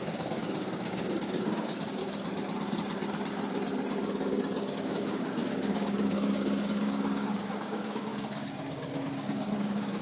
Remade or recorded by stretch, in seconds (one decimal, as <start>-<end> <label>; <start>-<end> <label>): 0.0-2.0 remade; 2.0-4.7 recorded; 4.7-10.0 remade